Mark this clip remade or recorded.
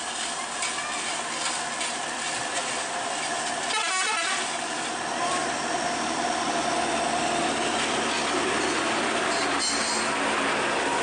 recorded